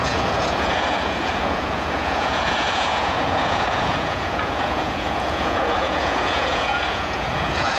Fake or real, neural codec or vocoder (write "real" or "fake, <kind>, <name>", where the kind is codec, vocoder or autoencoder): fake, vocoder, Vocos